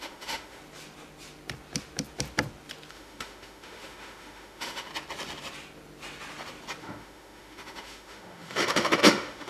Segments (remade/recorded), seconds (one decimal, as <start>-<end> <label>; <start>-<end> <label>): 0.0-0.6 remade; 0.6-2.9 recorded; 2.9-4.9 remade; 4.9-6.8 recorded; 6.8-9.5 remade